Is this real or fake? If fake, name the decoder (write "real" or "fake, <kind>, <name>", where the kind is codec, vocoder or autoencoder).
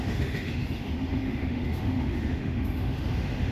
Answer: fake, autoencoder, DAC-VAE